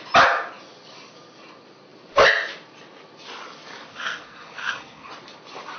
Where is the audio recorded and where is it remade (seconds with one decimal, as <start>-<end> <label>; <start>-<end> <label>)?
0.0-3.9 recorded; 3.9-5.1 remade; 5.1-5.8 recorded